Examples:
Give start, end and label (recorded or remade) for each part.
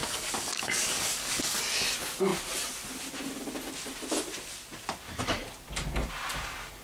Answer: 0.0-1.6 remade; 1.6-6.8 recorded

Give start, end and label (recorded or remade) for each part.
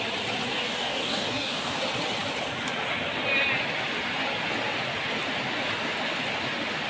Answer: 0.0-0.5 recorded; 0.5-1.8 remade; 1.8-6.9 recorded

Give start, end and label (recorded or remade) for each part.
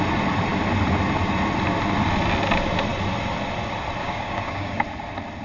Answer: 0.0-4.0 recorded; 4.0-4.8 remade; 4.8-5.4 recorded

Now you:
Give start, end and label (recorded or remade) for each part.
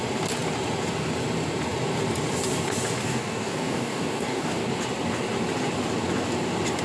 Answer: 0.0-3.0 recorded; 3.0-4.7 remade; 4.7-6.8 recorded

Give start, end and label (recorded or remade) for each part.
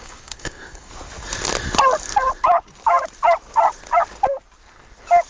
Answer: 0.0-0.9 remade; 0.9-5.3 recorded